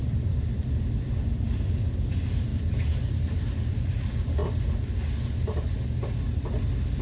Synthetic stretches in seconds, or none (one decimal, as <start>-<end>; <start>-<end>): 0.0-4.4; 6.4-7.0